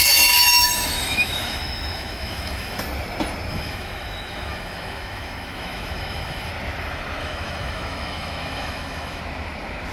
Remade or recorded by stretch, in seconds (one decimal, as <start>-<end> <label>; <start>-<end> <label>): 0.0-2.8 remade; 2.8-3.5 recorded; 3.5-6.5 remade; 6.5-7.2 recorded; 7.2-9.2 remade; 9.2-9.9 recorded